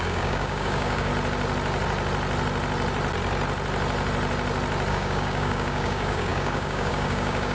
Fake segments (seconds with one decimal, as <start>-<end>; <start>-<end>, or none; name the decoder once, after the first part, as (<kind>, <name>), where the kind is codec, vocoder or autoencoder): 0.0-1.1 (codec, DAC); 4.9-7.5

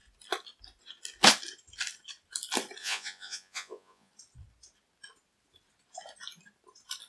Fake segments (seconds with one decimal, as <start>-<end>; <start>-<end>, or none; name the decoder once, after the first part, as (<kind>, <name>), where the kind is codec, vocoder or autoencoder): 2.8-4.1 (vocoder, Vocos)

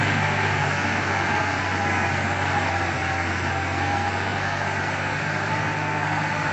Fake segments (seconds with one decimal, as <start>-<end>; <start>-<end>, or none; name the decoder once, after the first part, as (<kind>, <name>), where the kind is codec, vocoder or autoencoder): 0.0-6.5 (codec, SNAC)

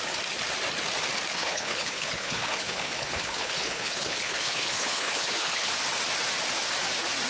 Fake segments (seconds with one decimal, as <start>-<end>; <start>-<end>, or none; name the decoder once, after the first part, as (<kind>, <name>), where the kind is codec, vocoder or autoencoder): 1.3-5.7 (codec, HILCodec)

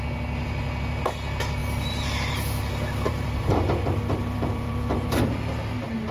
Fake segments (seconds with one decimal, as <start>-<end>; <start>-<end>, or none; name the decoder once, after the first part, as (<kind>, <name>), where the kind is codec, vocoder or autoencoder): 1.6-5.2 (vocoder, BigVGAN v2)

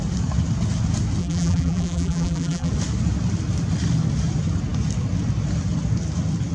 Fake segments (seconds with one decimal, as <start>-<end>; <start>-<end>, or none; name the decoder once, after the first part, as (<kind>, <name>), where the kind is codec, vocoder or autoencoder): 1.2-2.7 (vocoder, BigVGAN v2)